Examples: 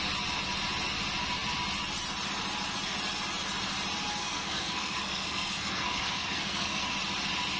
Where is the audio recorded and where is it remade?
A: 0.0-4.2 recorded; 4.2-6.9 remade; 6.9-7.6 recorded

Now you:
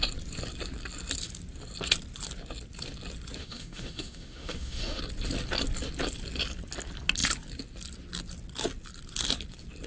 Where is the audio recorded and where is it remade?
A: 0.0-3.4 recorded; 3.4-5.0 remade; 5.0-9.9 recorded